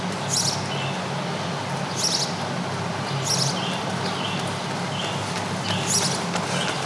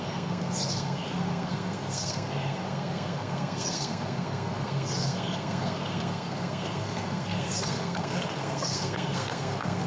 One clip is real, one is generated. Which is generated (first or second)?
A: second